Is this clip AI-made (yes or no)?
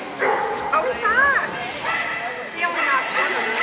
no